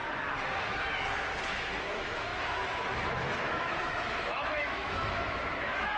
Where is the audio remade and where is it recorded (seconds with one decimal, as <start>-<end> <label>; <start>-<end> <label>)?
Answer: 0.0-1.5 recorded; 1.5-6.0 remade